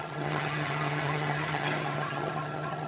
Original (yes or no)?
no